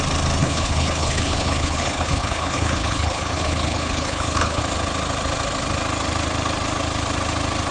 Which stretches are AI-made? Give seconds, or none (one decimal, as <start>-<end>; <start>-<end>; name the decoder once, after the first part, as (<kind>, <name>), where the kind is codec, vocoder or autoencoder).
0.4-4.6 (codec, HILCodec)